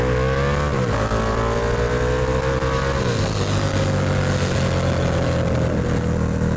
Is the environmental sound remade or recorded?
recorded